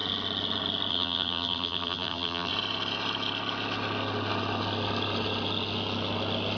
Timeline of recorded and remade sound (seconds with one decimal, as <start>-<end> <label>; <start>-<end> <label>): 0.0-0.9 recorded; 0.9-2.5 remade; 2.5-6.6 recorded